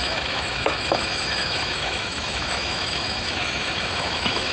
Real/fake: fake